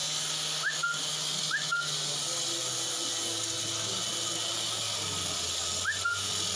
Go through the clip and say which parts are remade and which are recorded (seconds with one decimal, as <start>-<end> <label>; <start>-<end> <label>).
0.0-6.6 recorded